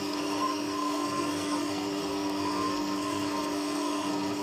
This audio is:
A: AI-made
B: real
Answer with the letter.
A